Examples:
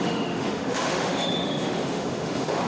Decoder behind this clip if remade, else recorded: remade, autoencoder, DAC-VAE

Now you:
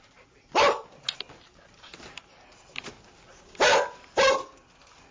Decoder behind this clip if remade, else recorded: recorded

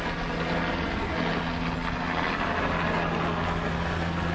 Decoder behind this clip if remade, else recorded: recorded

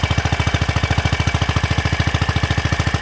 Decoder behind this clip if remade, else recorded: recorded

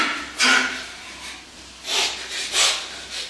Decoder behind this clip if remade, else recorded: recorded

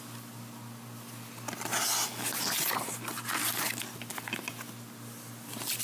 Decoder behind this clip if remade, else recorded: recorded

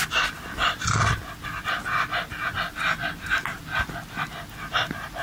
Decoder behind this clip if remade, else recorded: recorded